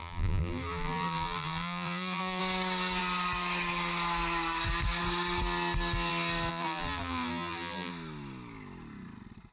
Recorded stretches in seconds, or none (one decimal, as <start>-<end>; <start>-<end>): 2.4-6.5; 7.9-9.5